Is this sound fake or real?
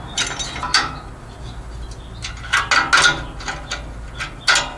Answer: real